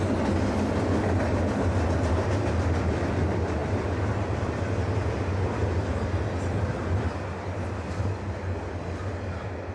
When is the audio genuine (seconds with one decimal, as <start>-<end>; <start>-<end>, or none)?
0.0-9.7